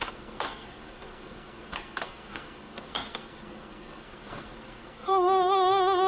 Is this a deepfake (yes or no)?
yes